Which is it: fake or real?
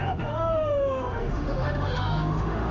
fake